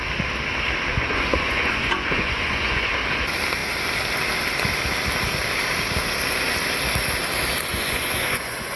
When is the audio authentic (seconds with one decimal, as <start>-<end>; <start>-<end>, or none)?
0.0-0.9; 2.9-7.7

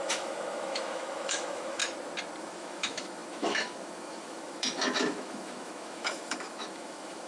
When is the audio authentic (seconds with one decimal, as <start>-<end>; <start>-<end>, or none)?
1.8-2.4

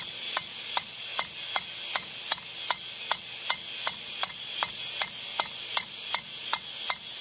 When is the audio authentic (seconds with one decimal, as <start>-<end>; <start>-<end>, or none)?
1.1-4.1; 4.8-5.6; 6.5-7.2